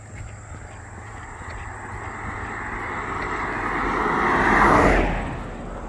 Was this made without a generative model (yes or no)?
yes